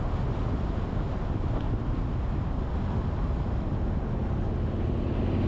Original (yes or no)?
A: yes